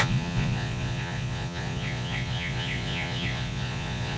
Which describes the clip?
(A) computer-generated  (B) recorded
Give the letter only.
A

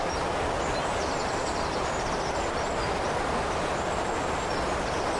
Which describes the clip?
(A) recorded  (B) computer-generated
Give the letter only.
A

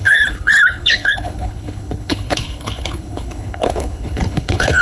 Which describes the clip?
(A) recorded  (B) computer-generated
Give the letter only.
B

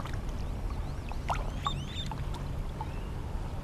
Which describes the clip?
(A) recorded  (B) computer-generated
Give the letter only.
A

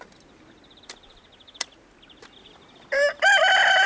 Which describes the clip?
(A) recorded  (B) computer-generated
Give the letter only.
A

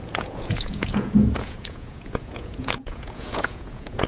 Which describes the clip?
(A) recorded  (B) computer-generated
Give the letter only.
B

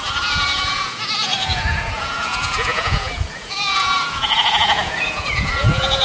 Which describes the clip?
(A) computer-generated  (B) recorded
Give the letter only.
A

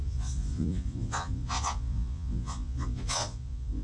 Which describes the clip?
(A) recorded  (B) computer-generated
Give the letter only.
B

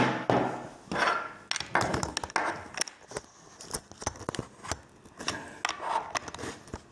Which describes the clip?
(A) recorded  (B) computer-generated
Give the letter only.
A